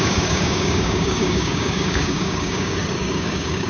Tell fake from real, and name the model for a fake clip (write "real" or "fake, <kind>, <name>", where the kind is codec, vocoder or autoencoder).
fake, codec, DAC